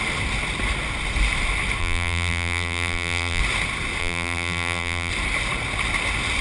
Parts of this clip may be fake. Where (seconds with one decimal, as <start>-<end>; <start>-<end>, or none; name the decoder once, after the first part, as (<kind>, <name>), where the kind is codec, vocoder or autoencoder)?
1.8-3.4 (vocoder, BigVGAN v2); 4.0-5.1